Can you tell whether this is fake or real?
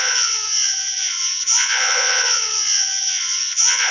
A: fake